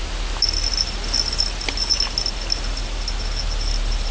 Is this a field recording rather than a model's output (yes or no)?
yes